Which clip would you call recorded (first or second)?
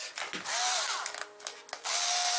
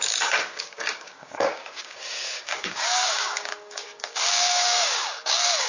first